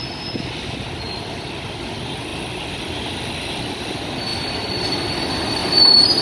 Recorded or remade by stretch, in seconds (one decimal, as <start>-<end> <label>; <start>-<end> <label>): 0.0-2.3 recorded; 2.3-3.6 remade; 3.6-5.6 recorded; 5.6-6.2 remade